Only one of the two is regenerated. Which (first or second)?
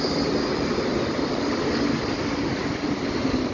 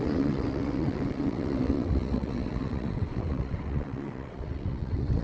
second